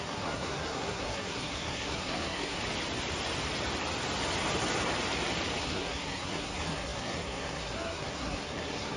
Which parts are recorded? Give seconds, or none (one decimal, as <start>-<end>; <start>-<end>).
2.6-5.6